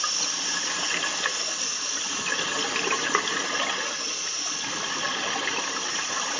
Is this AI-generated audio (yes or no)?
no